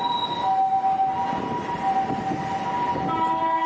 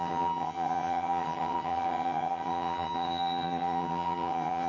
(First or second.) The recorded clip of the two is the first